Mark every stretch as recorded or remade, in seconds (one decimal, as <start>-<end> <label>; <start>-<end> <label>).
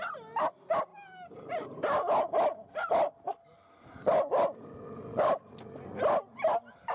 0.0-6.9 recorded